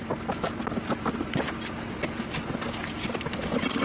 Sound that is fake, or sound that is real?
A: real